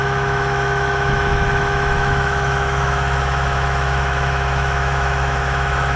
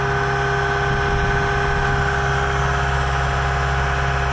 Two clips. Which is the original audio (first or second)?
second